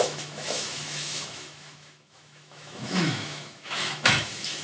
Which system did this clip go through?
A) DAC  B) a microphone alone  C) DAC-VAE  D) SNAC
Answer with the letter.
C